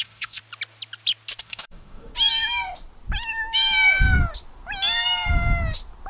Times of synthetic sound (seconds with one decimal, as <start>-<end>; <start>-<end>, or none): 0.0-0.4; 1.4-2.1